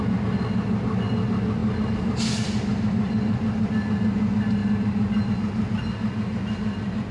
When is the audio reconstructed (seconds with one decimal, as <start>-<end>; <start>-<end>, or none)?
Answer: 2.7-3.7